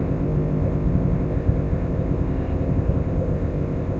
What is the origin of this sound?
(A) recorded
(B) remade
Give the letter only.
B